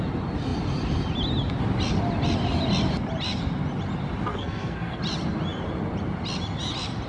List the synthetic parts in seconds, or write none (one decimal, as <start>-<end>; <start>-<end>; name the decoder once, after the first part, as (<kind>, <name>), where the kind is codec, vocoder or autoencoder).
4.3-5.0 (codec, SNAC)